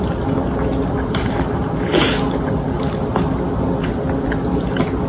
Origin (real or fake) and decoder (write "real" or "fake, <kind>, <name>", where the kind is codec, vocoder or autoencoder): real